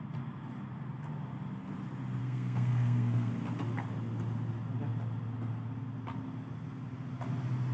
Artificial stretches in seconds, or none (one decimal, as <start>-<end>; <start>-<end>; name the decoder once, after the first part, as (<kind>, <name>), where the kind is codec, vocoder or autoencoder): 2.2-3.3 (codec, SNAC)